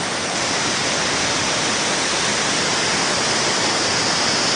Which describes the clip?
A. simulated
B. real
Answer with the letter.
B